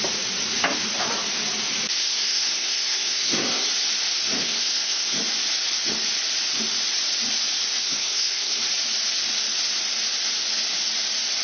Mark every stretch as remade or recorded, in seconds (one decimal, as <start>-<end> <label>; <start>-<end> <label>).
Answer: 0.0-2.0 recorded; 2.0-3.7 remade; 3.7-4.4 recorded; 4.4-5.2 remade; 5.2-7.8 recorded; 7.8-8.6 remade; 8.6-11.4 recorded